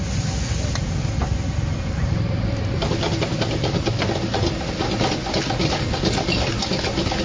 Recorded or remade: recorded